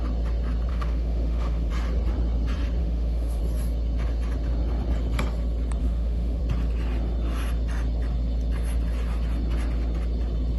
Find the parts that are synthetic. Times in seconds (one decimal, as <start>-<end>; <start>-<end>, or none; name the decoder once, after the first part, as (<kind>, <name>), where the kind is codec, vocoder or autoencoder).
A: 0.7-1.7 (autoencoder, DAC-VAE); 2.8-3.4; 5.8-6.4

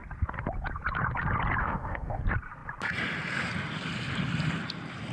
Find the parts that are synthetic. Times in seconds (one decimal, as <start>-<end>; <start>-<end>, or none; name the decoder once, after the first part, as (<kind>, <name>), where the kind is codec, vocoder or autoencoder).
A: 1.6-2.2 (autoencoder, DAC-VAE)

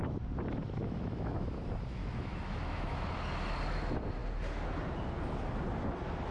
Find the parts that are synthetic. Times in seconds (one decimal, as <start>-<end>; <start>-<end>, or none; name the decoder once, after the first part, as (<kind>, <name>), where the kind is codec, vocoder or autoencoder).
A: 0.8-1.6 (autoencoder, DAC-VAE); 2.0-3.1

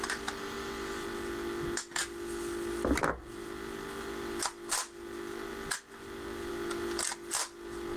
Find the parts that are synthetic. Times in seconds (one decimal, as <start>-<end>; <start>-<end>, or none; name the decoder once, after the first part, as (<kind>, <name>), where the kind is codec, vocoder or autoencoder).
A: none

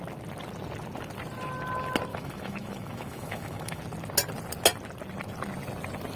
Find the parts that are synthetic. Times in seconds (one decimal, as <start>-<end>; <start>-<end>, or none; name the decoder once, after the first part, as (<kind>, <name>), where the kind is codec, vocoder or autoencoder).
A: 2.1-3.8 (autoencoder, DAC-VAE)

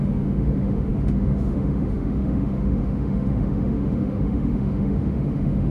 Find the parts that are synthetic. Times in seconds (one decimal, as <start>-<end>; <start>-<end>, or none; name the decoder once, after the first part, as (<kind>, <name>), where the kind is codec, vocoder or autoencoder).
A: 0.0-5.7 (autoencoder, DAC-VAE)

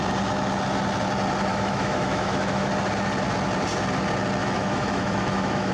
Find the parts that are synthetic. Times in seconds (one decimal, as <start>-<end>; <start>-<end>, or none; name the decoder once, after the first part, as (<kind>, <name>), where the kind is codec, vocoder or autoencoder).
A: 1.5-2.7 (autoencoder, DAC-VAE); 4.4-5.7

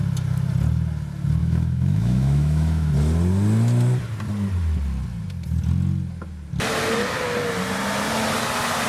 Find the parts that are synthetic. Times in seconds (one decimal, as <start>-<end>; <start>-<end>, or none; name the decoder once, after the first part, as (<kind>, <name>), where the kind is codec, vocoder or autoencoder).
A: 1.4-2.9 (autoencoder, DAC-VAE)